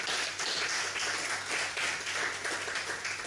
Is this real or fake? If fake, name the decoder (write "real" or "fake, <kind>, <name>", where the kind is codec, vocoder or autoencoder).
real